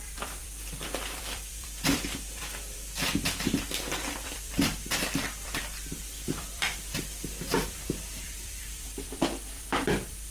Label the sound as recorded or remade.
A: remade